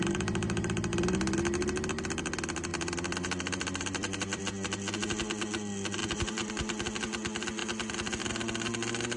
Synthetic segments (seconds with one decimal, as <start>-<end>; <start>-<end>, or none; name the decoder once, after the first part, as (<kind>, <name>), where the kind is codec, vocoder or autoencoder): 2.7-4.4 (vocoder, BigVGAN v2); 6.0-6.5